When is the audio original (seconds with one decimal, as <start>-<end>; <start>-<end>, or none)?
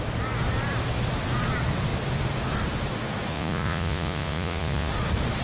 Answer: 0.0-3.3; 4.9-5.4